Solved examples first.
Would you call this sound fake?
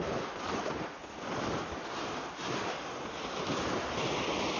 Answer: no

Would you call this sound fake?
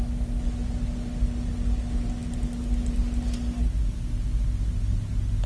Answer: no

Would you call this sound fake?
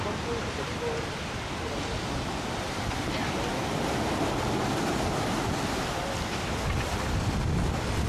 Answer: no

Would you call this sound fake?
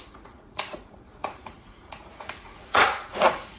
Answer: yes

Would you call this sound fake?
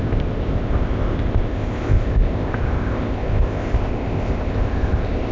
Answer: yes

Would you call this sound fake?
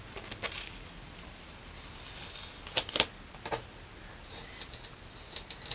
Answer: no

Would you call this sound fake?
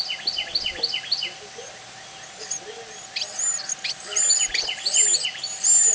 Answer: no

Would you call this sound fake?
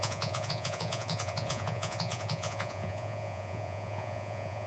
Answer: yes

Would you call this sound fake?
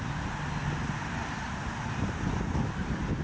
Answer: no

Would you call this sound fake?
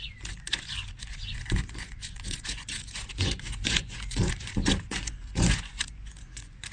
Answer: yes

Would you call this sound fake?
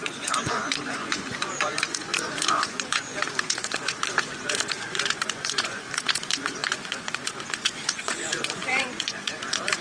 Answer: yes